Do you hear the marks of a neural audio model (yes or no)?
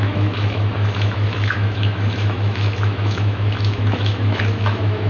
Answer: yes